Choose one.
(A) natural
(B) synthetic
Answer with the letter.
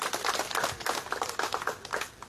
A